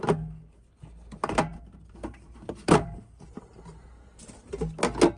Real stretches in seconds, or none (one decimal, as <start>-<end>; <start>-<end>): 0.0-1.5; 4.6-5.2